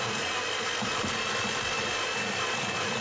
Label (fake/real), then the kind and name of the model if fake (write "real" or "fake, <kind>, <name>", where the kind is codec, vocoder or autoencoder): real